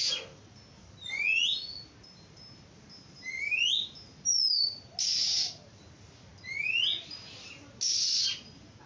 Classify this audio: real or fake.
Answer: real